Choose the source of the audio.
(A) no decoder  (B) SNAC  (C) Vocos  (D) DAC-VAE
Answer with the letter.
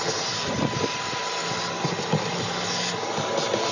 A